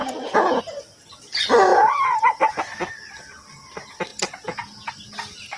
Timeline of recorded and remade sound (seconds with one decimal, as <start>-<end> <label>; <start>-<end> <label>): 0.0-0.6 remade; 0.6-1.7 recorded; 1.7-2.5 remade; 2.5-4.1 recorded; 4.1-4.9 remade; 4.9-5.6 recorded